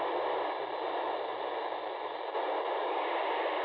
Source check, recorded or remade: recorded